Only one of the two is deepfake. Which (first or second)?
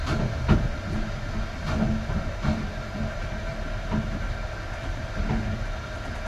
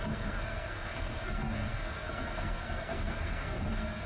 second